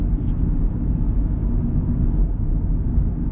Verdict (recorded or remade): recorded